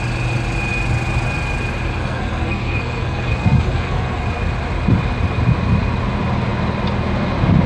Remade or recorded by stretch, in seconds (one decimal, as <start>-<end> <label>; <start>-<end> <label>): 0.0-2.0 recorded; 2.0-4.2 remade; 4.2-7.7 recorded